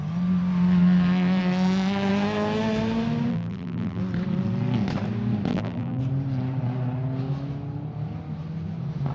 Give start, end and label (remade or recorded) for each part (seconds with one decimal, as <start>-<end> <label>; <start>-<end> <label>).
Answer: 0.0-3.3 recorded; 3.3-4.0 remade; 4.0-5.5 recorded; 5.5-6.0 remade; 6.0-9.1 recorded